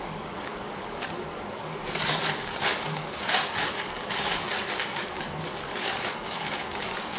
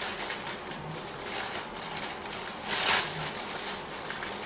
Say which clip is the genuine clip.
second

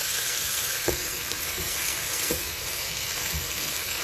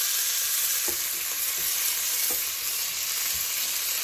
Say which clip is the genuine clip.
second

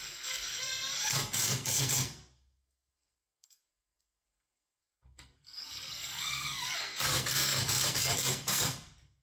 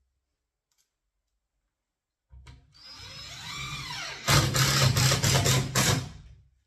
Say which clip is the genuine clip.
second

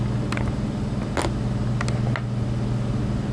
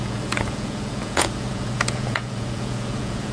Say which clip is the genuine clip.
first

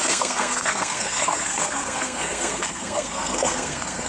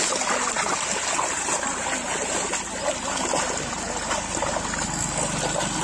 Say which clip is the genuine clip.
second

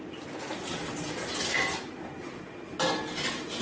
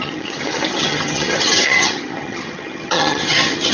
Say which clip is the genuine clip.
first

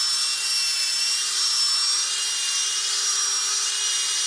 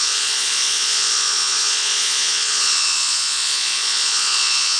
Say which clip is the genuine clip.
first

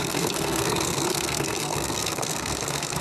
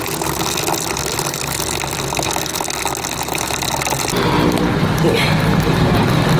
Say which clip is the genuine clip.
second